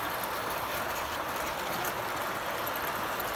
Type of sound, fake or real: real